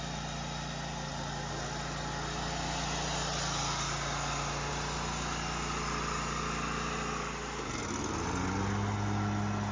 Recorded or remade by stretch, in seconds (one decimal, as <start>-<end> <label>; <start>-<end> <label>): 0.0-9.7 recorded